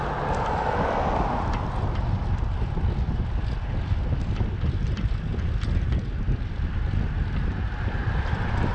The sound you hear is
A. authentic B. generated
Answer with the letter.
A